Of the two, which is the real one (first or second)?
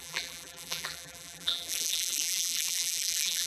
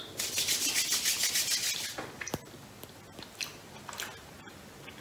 second